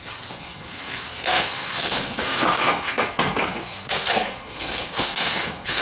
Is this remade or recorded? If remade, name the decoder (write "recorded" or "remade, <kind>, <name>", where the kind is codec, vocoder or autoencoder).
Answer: remade, codec, SNAC